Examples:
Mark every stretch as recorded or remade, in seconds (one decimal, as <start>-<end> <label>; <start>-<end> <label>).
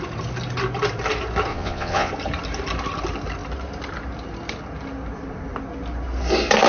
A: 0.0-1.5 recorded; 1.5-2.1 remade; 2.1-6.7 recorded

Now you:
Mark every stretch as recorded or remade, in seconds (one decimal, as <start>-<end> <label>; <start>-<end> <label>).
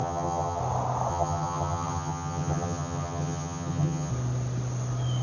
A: 0.0-0.6 remade; 0.6-1.1 recorded; 1.1-4.1 remade; 4.1-5.2 recorded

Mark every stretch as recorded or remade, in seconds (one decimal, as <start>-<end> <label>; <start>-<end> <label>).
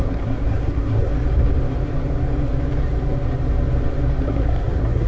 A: 0.0-1.1 remade; 1.1-4.2 recorded; 4.2-5.1 remade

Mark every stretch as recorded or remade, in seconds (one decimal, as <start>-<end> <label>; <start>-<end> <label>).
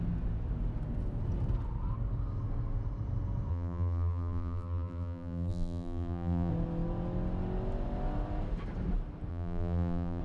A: 0.0-3.5 recorded; 3.5-6.5 remade; 6.5-9.3 recorded; 9.3-10.2 remade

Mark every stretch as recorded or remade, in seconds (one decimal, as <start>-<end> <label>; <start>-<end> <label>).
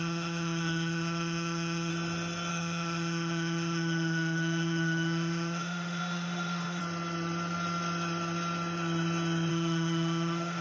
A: 0.0-1.9 remade; 1.9-2.5 recorded; 2.5-6.8 remade; 6.8-9.5 recorded; 9.5-10.6 remade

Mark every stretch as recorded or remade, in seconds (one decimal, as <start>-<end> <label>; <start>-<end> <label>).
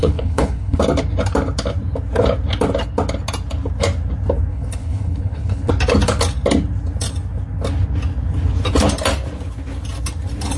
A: 0.0-0.8 remade; 0.8-4.5 recorded; 4.5-5.7 remade; 5.7-10.6 recorded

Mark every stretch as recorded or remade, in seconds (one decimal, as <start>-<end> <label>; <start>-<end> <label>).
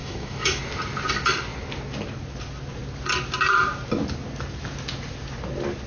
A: 0.0-0.6 remade; 0.6-5.9 recorded